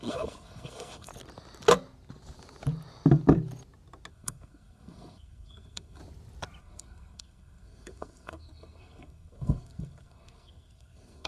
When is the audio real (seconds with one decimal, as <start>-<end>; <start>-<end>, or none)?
1.1-4.1; 6.0-6.6